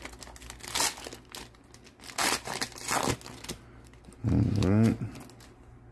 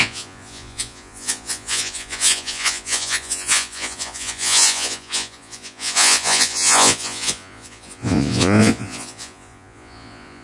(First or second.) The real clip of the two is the first